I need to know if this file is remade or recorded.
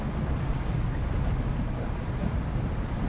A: recorded